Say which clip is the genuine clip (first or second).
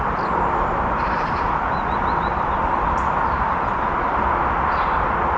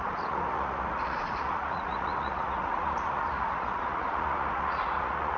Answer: first